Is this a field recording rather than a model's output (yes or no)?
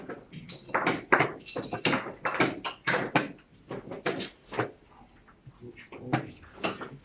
yes